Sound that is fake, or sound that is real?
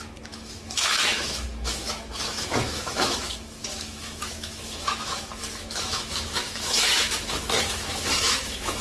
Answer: fake